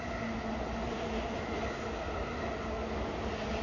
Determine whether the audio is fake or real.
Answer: real